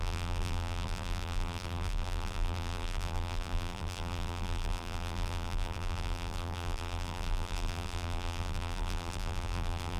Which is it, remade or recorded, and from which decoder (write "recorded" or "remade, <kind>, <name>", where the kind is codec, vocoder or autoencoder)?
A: remade, vocoder, BigVGAN v2